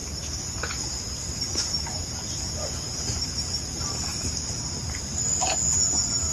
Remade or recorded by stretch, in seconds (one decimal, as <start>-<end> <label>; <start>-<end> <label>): 0.0-6.3 recorded